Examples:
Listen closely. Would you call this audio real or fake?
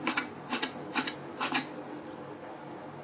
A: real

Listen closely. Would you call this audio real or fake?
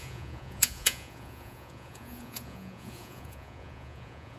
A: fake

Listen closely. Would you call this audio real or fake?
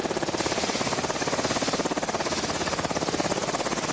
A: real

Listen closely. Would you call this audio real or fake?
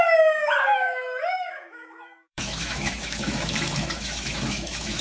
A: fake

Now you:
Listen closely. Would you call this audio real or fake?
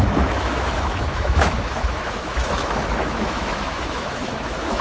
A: fake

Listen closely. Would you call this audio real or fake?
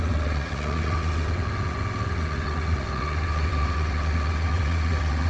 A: fake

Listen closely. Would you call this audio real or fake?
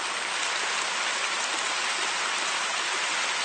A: real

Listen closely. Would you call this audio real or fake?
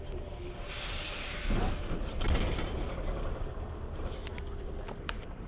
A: real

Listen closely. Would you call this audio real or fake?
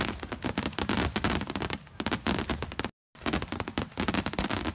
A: real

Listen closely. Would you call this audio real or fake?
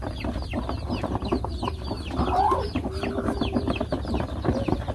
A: real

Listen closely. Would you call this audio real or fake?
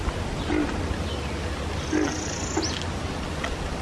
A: real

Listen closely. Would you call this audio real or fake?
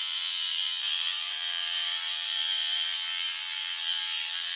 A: fake